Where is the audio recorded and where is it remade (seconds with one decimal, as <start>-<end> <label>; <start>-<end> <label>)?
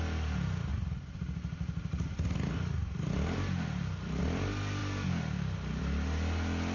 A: 0.0-0.7 recorded; 0.7-4.2 remade; 4.2-6.7 recorded